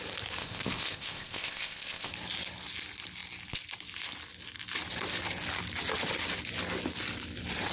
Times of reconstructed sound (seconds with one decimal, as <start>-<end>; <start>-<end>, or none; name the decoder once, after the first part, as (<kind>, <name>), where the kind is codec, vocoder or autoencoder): 0.4-2.1 (codec, ZipCodec)